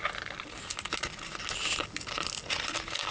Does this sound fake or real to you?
real